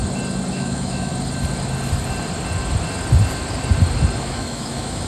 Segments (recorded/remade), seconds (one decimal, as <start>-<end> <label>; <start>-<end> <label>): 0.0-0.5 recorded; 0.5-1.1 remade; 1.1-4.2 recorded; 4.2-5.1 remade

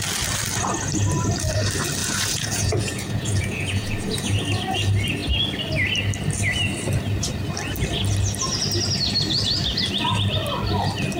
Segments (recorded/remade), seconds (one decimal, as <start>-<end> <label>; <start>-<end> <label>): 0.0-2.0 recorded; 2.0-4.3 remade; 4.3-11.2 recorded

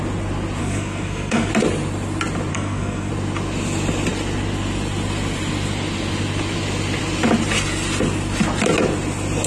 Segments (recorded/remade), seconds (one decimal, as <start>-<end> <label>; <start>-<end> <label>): 0.0-0.6 recorded; 0.6-1.5 remade; 1.5-2.5 recorded; 2.5-3.1 remade; 3.1-9.5 recorded

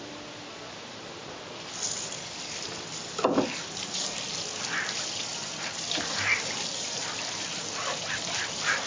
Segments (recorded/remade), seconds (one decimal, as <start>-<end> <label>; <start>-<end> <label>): 0.0-1.2 remade; 1.2-5.2 recorded; 5.2-6.3 remade; 6.3-6.8 recorded; 6.8-8.9 remade